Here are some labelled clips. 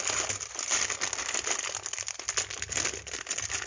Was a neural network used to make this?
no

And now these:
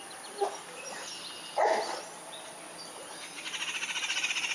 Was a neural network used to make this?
no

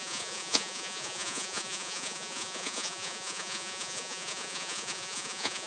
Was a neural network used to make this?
yes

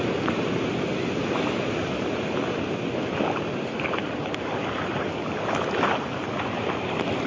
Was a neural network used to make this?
no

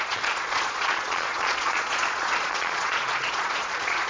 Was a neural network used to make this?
yes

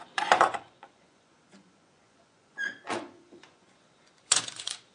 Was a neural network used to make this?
yes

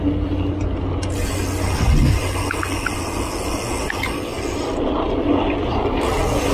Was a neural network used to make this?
no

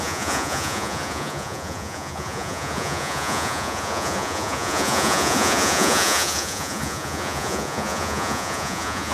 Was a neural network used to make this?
yes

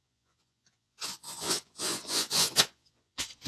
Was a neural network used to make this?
yes